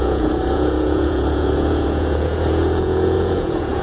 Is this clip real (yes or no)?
no